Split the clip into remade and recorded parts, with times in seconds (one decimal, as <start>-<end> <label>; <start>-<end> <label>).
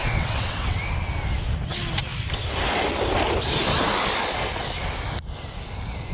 0.0-0.8 remade; 0.8-6.1 recorded